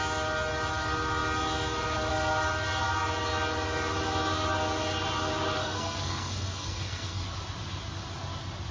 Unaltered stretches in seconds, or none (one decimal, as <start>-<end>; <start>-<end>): 0.0-5.6; 7.2-8.7